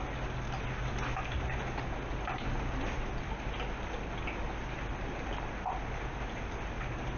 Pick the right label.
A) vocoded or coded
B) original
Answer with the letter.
B